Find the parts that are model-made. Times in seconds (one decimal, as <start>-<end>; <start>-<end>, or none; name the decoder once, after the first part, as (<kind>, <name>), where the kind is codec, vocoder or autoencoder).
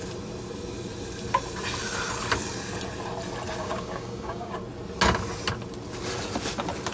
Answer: 3.6-4.6 (codec, DAC)